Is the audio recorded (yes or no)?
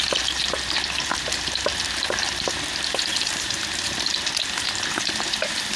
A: no